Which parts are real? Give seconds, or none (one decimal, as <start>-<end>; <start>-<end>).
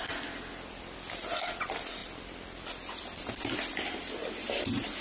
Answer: 0.0-5.0